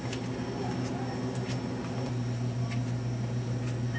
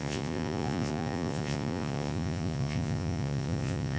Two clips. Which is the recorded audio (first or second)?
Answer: first